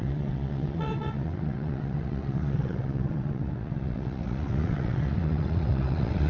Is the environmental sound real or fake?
fake